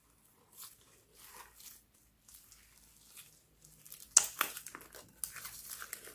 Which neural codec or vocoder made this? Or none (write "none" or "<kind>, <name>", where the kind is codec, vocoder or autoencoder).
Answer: none